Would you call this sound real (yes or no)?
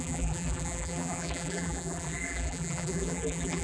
no